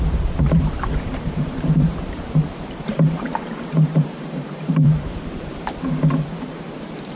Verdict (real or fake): fake